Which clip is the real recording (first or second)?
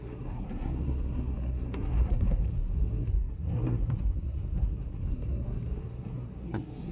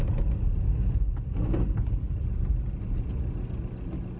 second